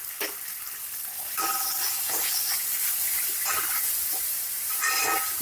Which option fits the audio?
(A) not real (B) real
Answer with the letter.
B